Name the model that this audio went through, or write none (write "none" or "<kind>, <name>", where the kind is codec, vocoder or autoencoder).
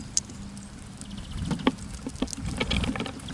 none